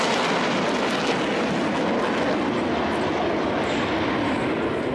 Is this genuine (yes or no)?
yes